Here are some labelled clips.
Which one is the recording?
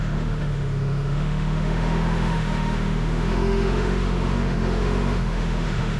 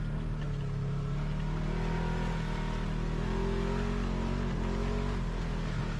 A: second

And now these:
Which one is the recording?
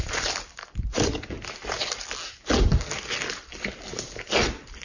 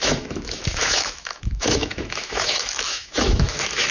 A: first